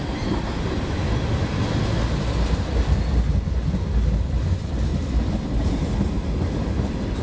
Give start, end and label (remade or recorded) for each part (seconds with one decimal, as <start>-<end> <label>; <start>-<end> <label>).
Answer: 0.0-7.2 recorded